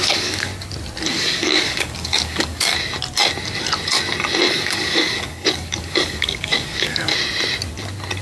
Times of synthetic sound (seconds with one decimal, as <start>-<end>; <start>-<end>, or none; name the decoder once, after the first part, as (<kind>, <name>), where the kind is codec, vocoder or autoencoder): 0.0-0.5 (codec, DAC); 1.1-2.7; 4.5-7.1